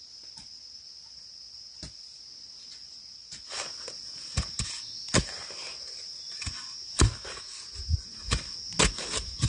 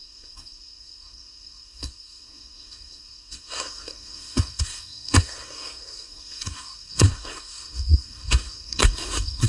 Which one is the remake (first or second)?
second